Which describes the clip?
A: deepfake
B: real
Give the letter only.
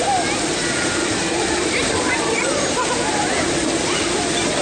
B